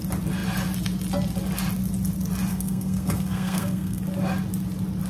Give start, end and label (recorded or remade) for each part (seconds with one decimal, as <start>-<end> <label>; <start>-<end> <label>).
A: 0.0-2.5 recorded; 2.5-4.0 remade; 4.0-5.1 recorded